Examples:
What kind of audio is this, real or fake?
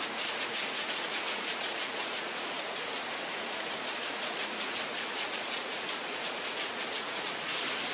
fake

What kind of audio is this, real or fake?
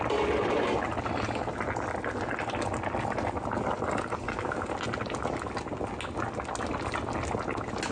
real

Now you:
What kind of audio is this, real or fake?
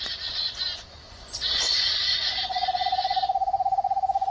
fake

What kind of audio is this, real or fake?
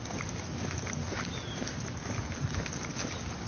real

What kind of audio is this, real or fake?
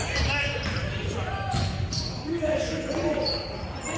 real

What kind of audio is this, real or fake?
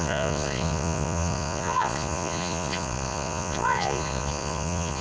fake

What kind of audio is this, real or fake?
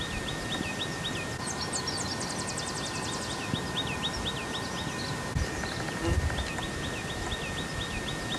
real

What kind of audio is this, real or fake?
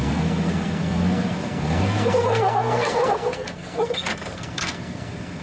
fake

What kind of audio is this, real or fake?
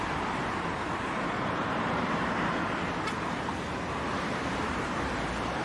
fake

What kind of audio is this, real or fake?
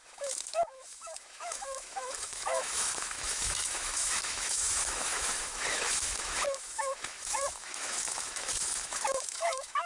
fake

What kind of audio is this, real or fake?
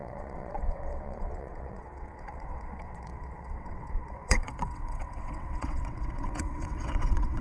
fake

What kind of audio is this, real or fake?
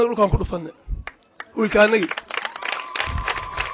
real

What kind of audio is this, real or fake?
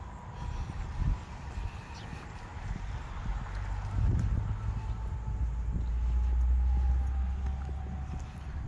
real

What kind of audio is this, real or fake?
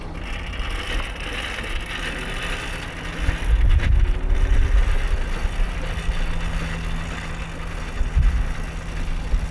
real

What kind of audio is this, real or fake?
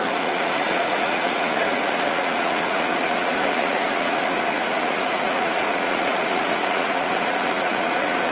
fake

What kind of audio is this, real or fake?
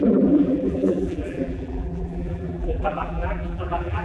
fake